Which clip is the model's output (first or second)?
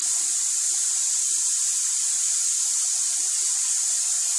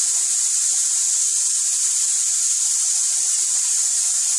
first